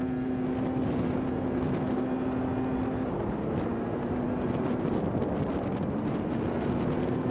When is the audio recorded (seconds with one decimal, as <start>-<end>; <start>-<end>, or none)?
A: 0.0-7.3